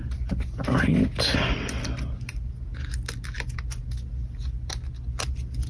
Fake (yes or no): no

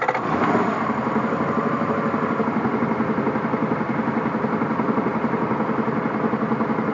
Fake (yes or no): no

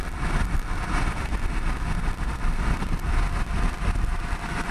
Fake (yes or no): no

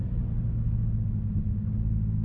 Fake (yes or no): no